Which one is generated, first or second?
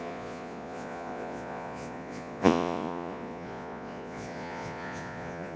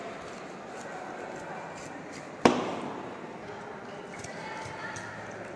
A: first